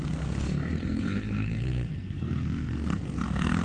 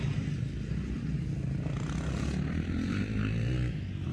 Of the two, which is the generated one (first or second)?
first